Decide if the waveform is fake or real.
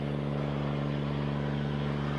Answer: real